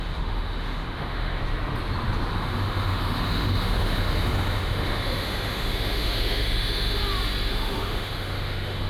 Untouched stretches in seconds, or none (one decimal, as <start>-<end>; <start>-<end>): 1.4-2.3; 7.0-7.5